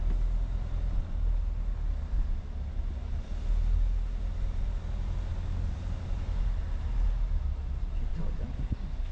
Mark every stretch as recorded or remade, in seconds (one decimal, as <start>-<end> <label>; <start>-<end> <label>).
0.0-8.1 recorded; 8.1-8.6 remade; 8.6-9.1 recorded